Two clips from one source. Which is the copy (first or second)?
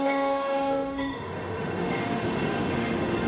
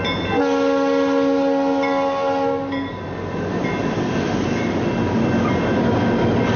first